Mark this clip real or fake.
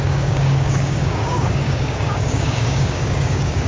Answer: fake